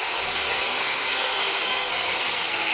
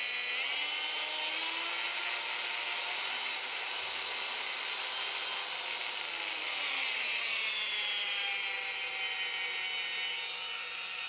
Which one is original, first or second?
second